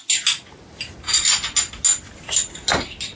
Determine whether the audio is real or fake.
real